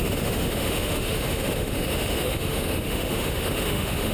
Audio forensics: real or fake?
fake